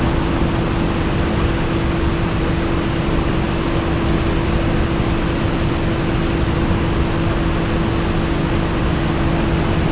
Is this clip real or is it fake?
real